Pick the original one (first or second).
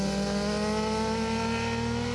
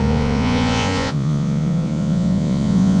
first